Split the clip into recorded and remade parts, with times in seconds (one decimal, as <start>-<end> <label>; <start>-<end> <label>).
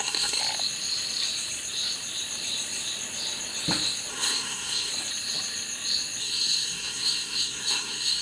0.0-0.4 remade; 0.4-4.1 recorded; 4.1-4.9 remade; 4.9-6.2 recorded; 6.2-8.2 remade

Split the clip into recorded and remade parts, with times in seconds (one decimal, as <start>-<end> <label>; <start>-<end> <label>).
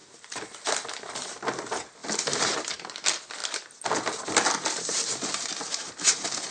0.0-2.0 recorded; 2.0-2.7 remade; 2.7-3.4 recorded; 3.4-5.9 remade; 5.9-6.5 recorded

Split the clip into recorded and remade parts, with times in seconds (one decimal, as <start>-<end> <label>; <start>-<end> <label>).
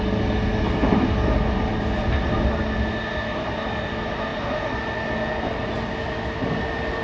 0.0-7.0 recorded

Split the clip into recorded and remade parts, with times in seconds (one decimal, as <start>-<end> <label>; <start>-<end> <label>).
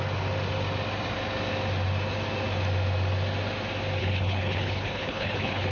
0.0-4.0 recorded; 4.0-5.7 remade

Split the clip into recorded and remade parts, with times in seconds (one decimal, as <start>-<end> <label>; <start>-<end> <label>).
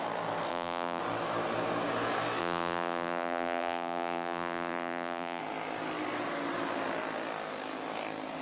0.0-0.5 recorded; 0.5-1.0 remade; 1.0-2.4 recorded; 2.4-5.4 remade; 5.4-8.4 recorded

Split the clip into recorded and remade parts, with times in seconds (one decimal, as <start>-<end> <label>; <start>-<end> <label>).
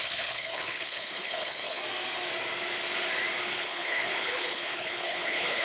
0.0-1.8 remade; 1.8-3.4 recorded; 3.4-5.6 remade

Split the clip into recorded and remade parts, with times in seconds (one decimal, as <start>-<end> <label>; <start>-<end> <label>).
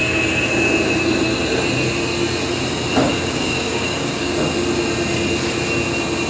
0.0-3.0 recorded; 3.0-4.3 remade; 4.3-6.3 recorded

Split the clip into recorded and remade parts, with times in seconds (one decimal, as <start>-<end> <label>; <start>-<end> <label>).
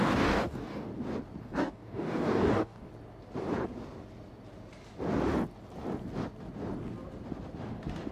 0.0-0.9 remade; 0.9-1.4 recorded; 1.4-2.9 remade; 2.9-8.1 recorded